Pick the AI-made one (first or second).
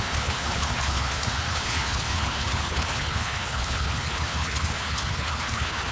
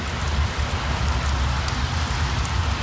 first